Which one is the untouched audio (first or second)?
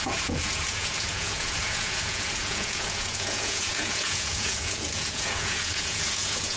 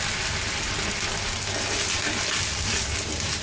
second